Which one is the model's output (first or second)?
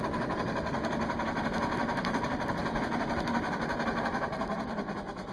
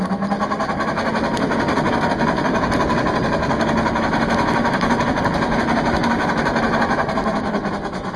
first